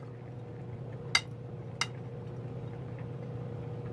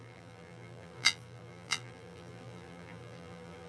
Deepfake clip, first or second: second